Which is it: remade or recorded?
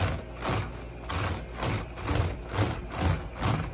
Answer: recorded